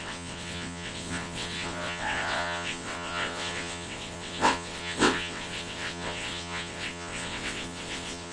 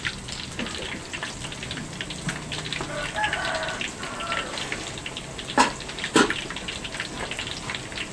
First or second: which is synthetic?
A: first